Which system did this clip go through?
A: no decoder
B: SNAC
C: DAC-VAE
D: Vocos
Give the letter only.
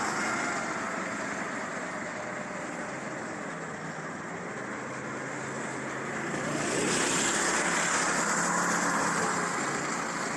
A